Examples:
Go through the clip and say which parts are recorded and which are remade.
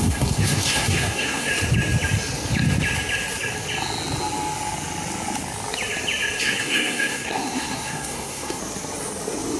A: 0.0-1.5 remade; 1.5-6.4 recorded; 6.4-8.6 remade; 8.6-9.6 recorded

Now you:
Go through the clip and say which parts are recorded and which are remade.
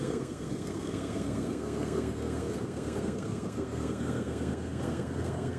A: 0.0-5.6 remade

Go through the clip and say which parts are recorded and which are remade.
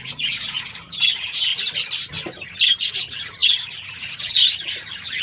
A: 0.0-1.5 remade; 1.5-2.9 recorded; 2.9-5.2 remade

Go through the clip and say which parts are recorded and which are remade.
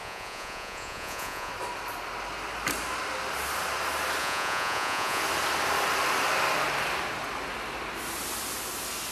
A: 0.0-1.5 remade; 1.5-4.2 recorded; 4.2-5.2 remade; 5.2-9.1 recorded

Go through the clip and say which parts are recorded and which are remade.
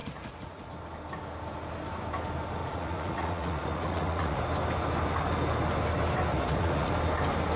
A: 0.0-0.7 remade; 0.7-2.6 recorded; 2.6-4.4 remade; 4.4-6.3 recorded; 6.3-6.9 remade; 6.9-7.6 recorded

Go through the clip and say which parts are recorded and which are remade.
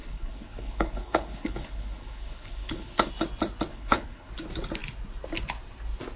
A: 0.0-3.1 remade; 3.1-3.7 recorded; 3.7-4.3 remade; 4.3-6.2 recorded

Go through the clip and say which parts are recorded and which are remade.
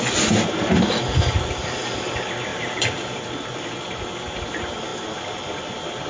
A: 0.0-6.1 recorded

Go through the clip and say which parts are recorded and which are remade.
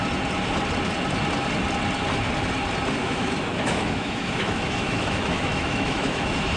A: 0.0-3.0 recorded; 3.0-6.6 remade